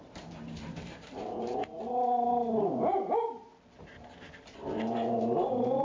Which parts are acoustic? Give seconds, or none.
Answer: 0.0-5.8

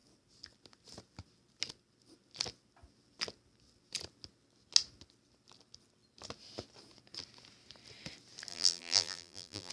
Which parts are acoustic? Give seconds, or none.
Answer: 0.0-8.5